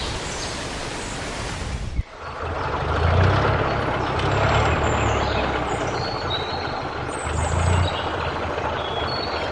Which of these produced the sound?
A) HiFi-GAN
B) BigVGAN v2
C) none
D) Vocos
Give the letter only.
C